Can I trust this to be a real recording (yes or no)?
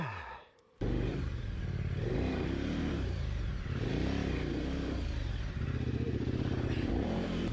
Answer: no